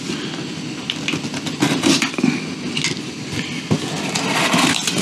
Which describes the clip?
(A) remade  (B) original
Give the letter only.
B